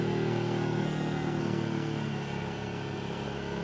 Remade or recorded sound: remade